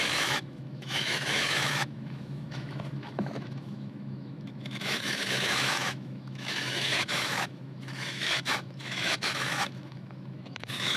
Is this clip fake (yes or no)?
yes